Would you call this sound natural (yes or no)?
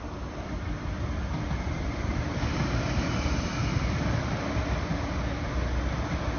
yes